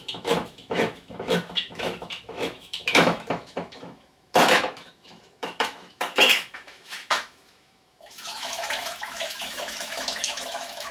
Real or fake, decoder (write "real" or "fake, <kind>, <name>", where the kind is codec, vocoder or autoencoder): fake, autoencoder, DAC-VAE